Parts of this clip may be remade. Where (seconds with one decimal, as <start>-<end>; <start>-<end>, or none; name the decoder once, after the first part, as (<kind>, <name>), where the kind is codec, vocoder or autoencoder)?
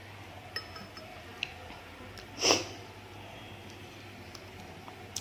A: none